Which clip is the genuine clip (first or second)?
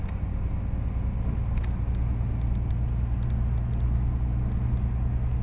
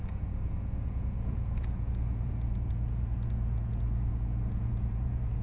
first